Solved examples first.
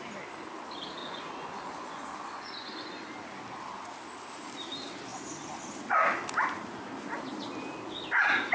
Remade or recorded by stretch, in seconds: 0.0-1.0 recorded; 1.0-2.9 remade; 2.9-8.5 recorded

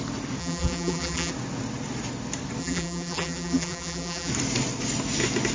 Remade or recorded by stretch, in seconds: 0.0-0.4 recorded; 0.4-1.3 remade; 1.3-2.6 recorded; 2.6-4.3 remade; 4.3-5.5 recorded

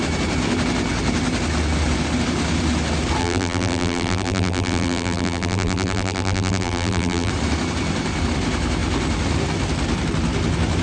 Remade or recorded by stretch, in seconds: 0.0-3.2 recorded; 3.2-7.3 remade; 7.3-10.8 recorded

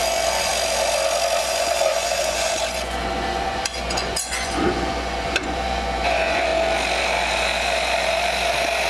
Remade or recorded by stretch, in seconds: 0.0-0.5 remade; 0.5-1.4 recorded; 1.4-6.5 remade; 6.5-8.9 recorded

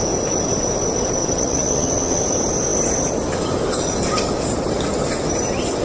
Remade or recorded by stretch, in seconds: 0.0-1.2 recorded; 1.2-2.2 remade; 2.2-5.8 recorded